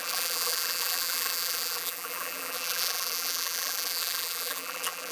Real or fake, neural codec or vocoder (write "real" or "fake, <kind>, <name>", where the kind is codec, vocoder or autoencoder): fake, vocoder, BigVGAN v2